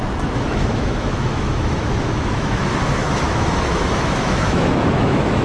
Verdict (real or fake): fake